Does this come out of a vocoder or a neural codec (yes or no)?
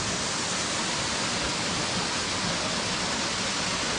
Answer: no